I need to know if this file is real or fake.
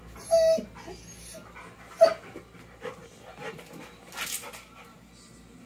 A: real